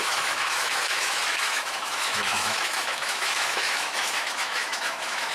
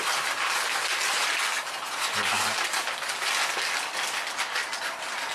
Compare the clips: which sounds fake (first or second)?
first